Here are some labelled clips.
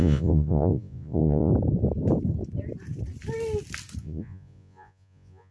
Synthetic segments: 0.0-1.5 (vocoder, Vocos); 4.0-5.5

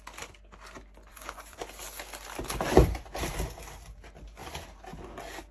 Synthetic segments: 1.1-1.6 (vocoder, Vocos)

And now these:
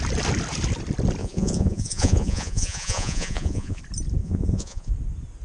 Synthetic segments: 1.2-3.8 (vocoder, Vocos); 4.2-4.9

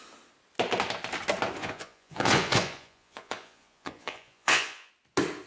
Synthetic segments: 1.6-4.9 (vocoder, Vocos)

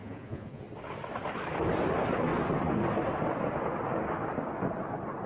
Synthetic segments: 0.0-0.6 (vocoder, Vocos)